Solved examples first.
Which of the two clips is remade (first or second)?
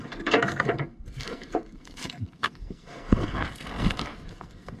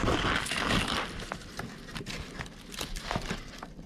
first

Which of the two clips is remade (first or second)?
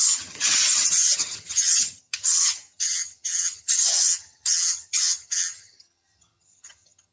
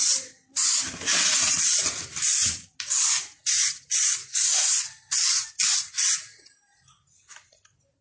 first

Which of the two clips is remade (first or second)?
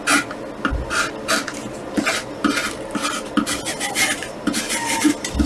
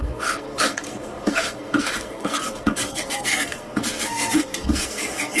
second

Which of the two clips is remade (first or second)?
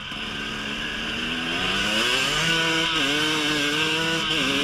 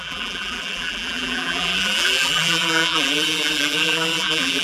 second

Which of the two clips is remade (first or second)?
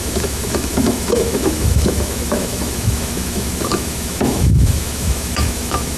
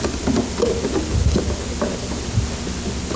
first